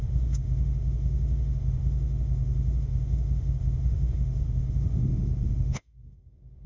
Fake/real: fake